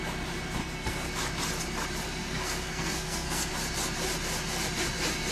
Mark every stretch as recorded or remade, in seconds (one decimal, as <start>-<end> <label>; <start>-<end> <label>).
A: 0.0-0.6 recorded; 0.6-1.1 remade; 1.1-2.2 recorded; 2.2-3.5 remade; 3.5-5.3 recorded